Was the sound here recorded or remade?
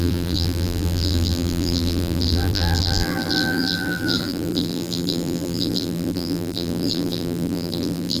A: remade